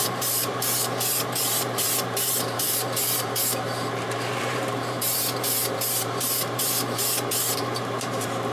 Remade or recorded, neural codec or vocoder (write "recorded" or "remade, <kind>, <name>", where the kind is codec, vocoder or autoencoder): remade, vocoder, BigVGAN v2